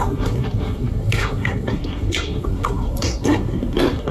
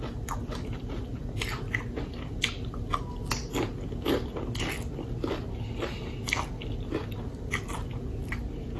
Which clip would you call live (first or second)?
second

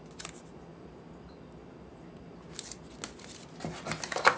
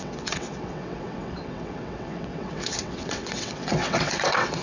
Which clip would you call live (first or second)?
first